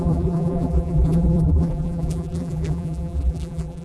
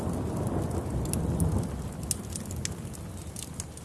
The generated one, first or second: first